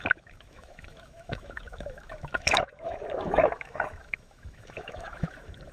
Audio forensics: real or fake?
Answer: fake